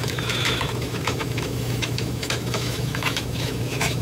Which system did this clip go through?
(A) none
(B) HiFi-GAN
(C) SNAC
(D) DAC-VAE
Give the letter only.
D